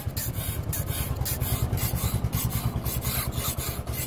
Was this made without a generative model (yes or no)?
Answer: yes